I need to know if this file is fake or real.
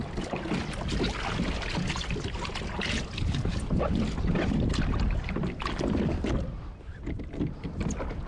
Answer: real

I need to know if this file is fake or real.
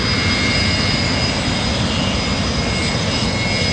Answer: real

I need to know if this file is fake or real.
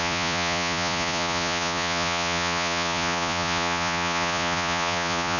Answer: fake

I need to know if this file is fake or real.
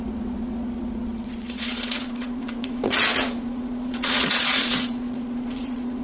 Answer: fake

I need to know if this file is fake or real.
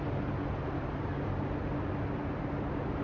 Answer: real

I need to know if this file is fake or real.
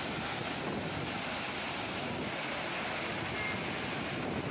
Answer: real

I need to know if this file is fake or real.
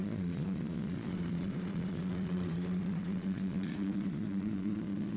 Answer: fake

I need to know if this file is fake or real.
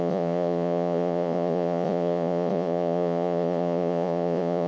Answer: fake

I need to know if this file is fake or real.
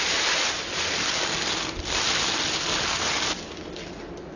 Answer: real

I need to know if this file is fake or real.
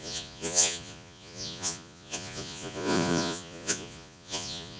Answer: fake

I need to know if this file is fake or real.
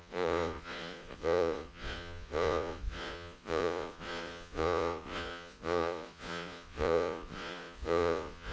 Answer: fake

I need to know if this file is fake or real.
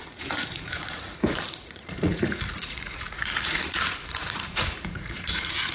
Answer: fake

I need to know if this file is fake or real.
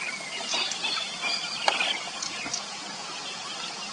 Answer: real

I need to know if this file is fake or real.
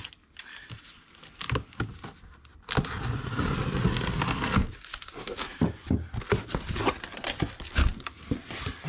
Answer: real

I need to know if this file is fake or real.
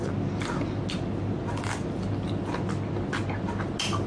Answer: real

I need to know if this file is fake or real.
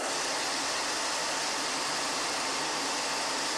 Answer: real